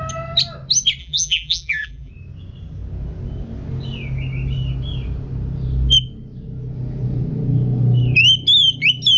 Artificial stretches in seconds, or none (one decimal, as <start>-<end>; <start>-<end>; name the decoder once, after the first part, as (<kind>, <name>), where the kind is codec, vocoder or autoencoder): 1.0-2.1 (vocoder, BigVGAN v2)